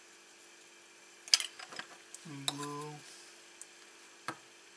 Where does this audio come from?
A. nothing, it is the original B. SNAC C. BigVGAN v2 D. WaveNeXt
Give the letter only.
A